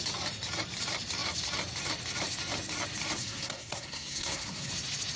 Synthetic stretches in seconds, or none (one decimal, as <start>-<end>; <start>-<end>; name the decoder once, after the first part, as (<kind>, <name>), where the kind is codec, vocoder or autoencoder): 3.2-4.7 (codec, SNAC)